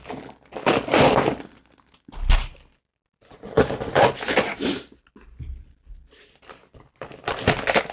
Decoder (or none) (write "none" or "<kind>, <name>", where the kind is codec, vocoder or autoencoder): none